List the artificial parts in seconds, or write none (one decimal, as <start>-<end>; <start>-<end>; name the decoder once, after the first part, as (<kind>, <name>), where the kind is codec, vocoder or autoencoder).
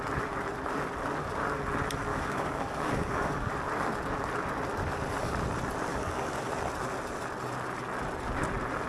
2.1-3.5 (codec, DAC); 5.9-6.5